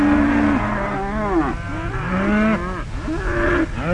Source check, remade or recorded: recorded